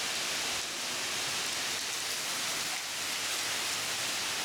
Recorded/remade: recorded